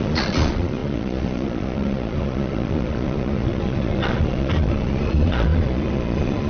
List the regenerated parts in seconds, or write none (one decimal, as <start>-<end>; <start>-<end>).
0.0-6.5